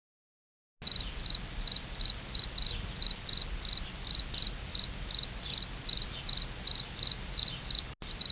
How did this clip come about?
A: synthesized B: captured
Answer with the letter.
B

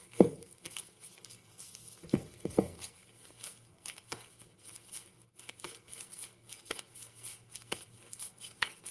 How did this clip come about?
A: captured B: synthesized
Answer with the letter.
B